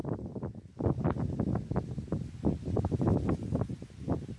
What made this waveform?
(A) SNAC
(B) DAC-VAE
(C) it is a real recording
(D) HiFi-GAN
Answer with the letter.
C